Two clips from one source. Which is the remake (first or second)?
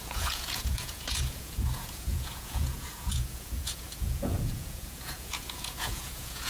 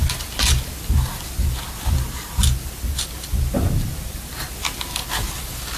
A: first